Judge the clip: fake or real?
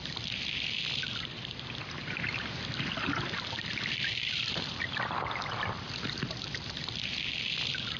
fake